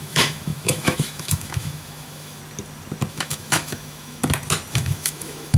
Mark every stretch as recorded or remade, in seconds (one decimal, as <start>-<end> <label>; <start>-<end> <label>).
0.0-2.4 remade; 2.4-3.1 recorded; 3.1-4.2 remade; 4.2-4.7 recorded; 4.7-5.6 remade